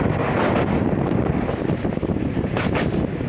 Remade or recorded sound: recorded